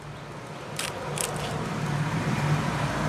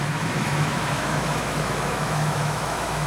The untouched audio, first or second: first